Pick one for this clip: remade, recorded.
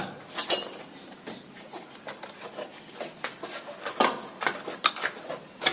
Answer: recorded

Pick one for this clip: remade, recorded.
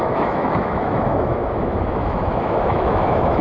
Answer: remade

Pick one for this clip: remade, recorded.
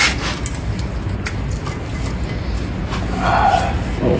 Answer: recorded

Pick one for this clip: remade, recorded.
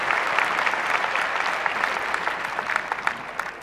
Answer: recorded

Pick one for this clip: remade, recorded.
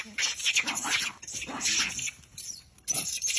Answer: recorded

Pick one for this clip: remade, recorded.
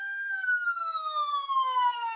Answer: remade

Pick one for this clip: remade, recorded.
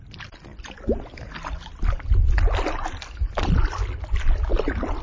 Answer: recorded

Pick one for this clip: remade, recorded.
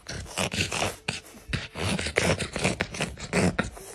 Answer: recorded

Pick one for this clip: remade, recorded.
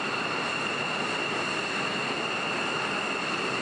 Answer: recorded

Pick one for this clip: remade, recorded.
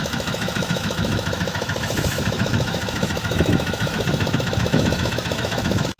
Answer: remade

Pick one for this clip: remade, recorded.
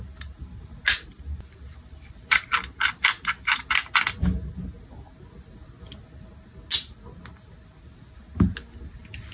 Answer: recorded